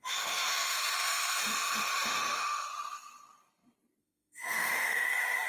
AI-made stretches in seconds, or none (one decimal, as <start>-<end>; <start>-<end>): 0.0-2.7; 4.0-5.5